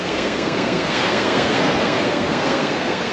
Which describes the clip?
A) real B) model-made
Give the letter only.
B